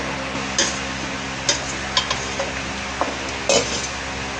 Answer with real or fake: real